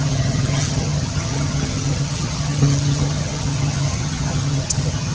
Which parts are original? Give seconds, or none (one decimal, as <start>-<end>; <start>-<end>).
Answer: none